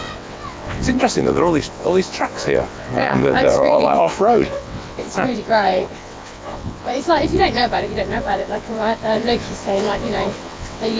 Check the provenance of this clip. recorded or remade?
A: remade